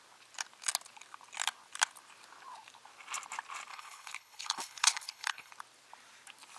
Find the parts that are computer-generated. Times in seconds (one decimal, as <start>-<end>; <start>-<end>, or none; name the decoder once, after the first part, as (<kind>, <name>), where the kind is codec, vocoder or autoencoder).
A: 3.7-5.5 (codec, HILCodec)